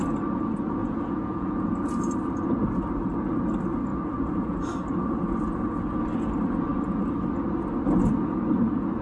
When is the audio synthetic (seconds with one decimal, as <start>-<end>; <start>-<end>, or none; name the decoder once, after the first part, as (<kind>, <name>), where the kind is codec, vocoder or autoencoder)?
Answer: 0.8-1.7 (vocoder, Vocos)